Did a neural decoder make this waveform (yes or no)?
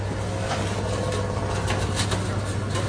no